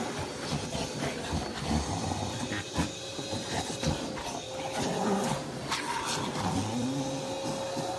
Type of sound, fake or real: real